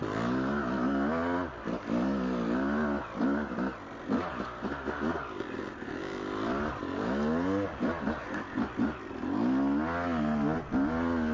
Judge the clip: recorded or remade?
recorded